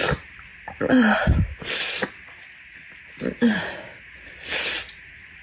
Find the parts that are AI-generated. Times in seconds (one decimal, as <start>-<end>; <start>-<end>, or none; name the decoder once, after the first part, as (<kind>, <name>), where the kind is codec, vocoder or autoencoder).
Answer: none